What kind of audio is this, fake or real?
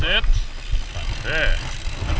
real